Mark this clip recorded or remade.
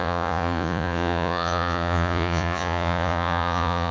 remade